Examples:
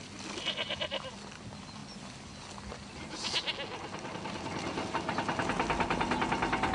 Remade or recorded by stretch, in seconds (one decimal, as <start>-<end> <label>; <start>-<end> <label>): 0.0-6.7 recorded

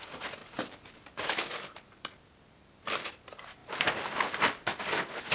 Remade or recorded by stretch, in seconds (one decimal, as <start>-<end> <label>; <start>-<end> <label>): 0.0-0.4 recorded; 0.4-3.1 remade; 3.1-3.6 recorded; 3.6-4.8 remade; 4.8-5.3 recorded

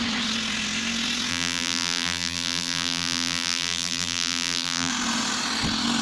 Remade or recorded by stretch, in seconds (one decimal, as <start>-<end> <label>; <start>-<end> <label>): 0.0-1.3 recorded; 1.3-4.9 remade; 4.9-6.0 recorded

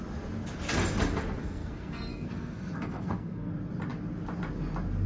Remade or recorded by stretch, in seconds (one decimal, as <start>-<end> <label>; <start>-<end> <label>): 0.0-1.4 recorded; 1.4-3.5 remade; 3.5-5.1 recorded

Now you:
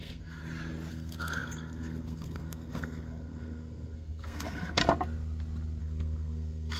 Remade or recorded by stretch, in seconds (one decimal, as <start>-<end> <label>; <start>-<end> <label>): 0.0-0.4 remade; 0.4-0.9 recorded; 0.9-4.8 remade; 4.8-5.8 recorded; 5.8-6.8 remade

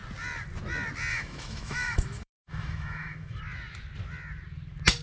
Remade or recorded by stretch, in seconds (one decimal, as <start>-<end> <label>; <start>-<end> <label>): 0.0-1.1 recorded; 1.1-3.4 remade; 3.4-5.0 recorded

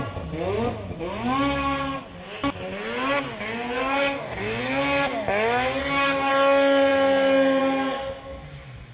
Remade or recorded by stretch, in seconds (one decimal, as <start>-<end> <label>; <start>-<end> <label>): 0.0-3.8 recorded; 3.8-4.6 remade; 4.6-5.8 recorded; 5.8-6.3 remade; 6.3-8.9 recorded

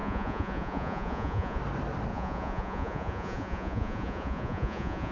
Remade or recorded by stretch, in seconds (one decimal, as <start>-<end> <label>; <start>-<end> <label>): 0.0-1.6 remade; 1.6-2.1 recorded; 2.1-5.1 remade